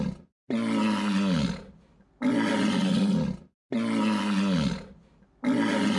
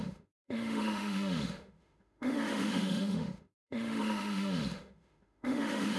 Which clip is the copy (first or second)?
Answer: second